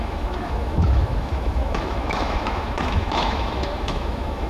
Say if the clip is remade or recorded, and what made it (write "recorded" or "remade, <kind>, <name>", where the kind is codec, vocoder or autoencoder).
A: remade, autoencoder, DAC-VAE